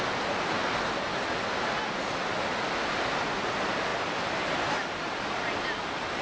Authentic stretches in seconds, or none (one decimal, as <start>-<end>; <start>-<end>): 0.0-6.2

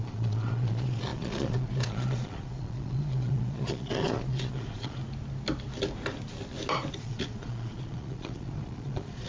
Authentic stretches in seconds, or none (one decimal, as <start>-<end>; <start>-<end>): 5.0-7.0